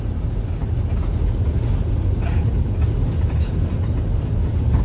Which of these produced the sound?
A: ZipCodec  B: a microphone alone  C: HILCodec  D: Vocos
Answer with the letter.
B